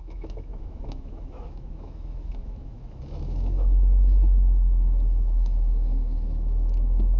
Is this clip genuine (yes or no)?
no